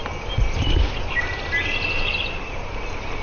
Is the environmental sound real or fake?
real